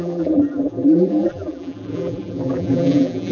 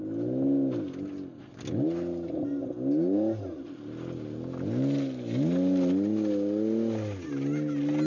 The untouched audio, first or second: second